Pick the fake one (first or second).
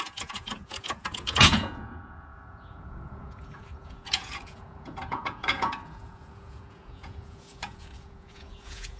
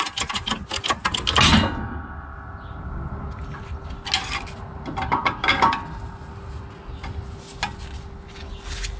first